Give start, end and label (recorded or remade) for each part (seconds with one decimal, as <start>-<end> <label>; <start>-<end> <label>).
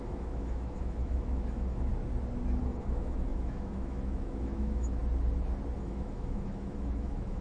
0.0-1.9 remade; 1.9-2.6 recorded; 2.6-5.0 remade; 5.0-5.8 recorded; 5.8-7.4 remade